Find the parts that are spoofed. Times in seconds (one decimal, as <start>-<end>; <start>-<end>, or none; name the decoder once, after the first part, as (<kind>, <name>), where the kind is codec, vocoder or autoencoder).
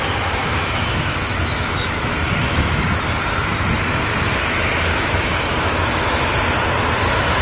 0.4-2.1 (autoencoder, DAC-VAE); 4.9-6.0